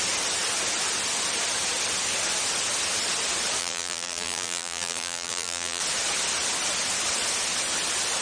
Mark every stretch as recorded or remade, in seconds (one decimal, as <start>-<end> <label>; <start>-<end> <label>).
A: 0.0-3.6 recorded; 3.6-5.8 remade; 5.8-8.2 recorded